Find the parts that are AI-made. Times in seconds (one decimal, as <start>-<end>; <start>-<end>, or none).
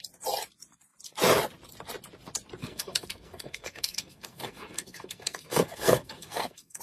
2.6-6.8